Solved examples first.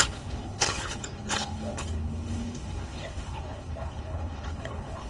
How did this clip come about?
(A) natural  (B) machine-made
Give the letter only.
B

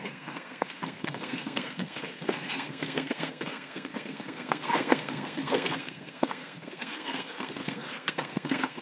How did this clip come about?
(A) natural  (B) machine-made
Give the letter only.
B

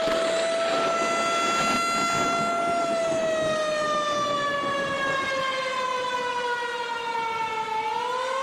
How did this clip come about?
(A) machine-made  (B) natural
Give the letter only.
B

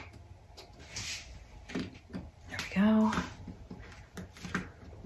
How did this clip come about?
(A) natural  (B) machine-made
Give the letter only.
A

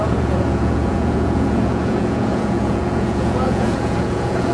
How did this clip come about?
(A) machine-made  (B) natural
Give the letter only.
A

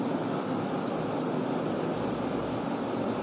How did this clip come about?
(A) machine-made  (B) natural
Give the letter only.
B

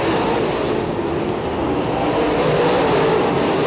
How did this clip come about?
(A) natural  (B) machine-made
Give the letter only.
A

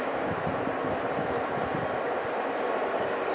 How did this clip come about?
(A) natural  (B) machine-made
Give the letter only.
A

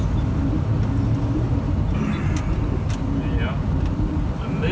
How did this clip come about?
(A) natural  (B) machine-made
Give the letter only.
A